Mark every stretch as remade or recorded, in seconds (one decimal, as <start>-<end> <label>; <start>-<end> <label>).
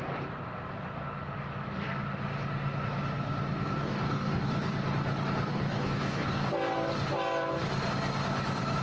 0.0-3.8 recorded; 3.8-4.5 remade; 4.5-5.5 recorded; 5.5-6.5 remade; 6.5-8.8 recorded